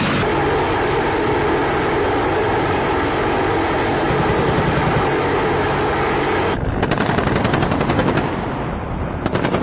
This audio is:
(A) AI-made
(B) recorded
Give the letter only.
B